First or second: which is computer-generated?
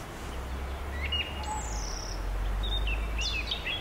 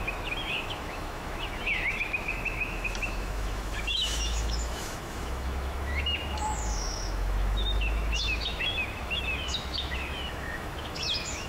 second